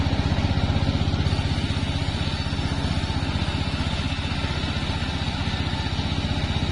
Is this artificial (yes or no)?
no